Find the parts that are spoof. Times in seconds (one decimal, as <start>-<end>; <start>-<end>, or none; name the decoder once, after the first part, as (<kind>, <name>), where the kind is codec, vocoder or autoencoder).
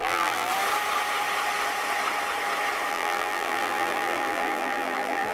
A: 0.0-0.5 (vocoder, BigVGAN v2); 2.9-5.3